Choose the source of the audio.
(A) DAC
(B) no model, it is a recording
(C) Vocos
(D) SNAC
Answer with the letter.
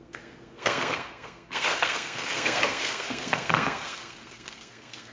D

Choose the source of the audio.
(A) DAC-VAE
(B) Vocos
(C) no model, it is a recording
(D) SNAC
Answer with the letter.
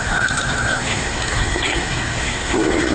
D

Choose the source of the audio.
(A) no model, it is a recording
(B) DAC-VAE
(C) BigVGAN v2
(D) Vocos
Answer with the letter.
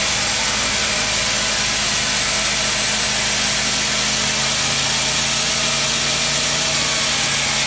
A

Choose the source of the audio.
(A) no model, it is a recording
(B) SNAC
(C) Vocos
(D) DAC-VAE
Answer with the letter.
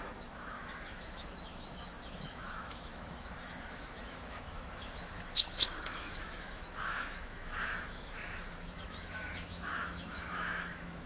D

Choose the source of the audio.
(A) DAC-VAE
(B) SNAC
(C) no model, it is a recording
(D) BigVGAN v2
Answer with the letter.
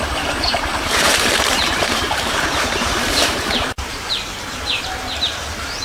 D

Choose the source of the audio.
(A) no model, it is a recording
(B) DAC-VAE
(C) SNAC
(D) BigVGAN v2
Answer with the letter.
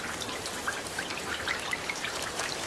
D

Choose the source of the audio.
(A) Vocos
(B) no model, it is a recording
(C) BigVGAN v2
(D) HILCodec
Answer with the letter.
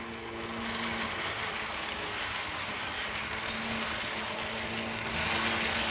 B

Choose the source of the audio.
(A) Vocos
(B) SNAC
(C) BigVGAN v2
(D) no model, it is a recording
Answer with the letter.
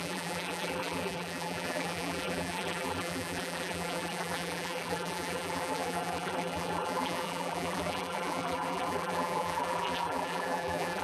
C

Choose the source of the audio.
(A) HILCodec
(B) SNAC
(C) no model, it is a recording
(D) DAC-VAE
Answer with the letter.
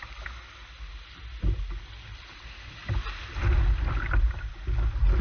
C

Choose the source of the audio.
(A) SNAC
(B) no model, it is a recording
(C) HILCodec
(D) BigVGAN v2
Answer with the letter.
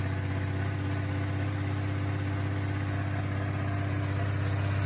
B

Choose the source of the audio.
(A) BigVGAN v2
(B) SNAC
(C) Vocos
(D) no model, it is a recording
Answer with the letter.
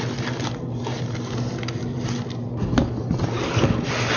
D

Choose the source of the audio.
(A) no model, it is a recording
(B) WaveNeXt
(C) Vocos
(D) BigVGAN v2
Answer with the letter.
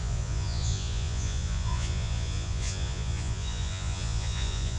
C